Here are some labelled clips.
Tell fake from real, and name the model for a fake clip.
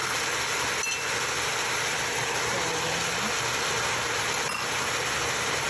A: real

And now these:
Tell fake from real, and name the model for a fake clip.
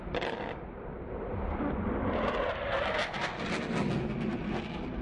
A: real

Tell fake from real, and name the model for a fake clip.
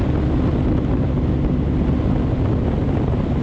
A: real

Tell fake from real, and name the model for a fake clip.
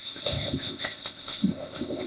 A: fake, codec, ZipCodec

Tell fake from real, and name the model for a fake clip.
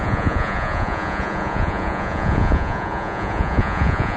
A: fake, vocoder, Vocos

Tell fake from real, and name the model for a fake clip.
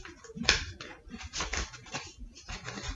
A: fake, vocoder, BigVGAN v2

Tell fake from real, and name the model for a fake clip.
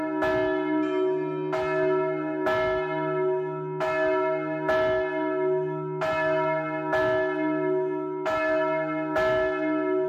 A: real